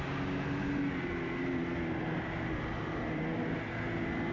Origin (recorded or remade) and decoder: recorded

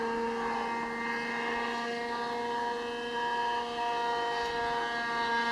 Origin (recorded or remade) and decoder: recorded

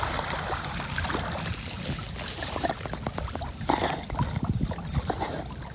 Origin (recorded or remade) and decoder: recorded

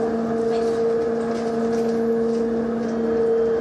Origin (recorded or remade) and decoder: recorded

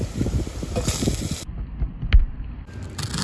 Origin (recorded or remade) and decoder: recorded